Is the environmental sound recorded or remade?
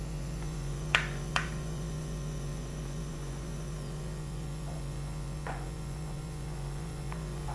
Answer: remade